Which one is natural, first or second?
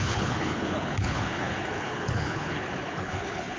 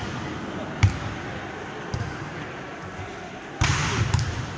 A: second